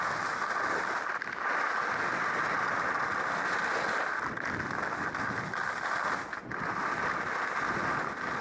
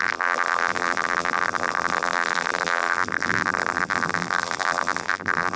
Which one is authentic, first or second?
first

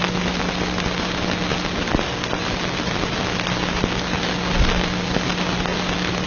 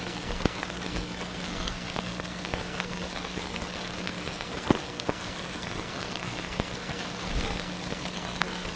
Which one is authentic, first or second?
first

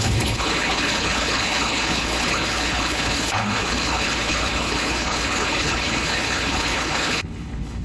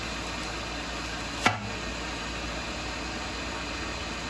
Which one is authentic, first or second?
second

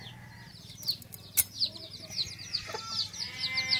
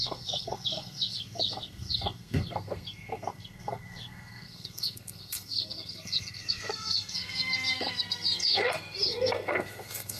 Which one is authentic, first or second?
first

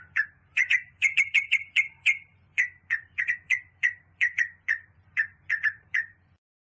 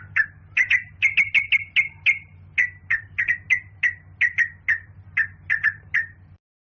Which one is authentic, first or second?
second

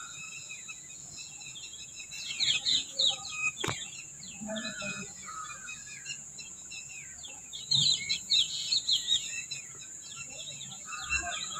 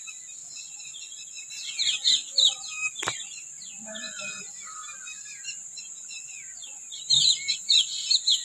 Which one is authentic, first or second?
second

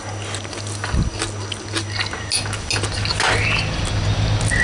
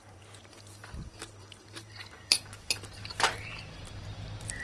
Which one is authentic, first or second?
first